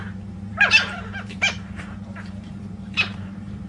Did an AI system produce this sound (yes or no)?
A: yes